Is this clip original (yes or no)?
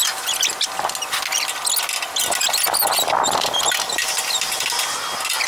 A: yes